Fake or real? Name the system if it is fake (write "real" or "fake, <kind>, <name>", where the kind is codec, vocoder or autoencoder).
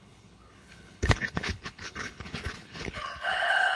fake, codec, HILCodec